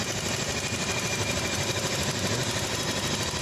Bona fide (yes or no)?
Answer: yes